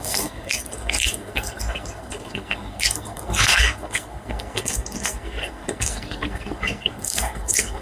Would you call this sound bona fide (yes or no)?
no